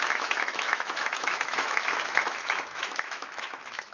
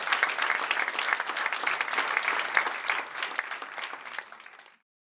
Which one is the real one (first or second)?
second